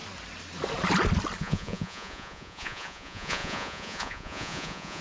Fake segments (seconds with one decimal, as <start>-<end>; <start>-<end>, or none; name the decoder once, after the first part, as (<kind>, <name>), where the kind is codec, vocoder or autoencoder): 1.4-5.0 (vocoder, Vocos)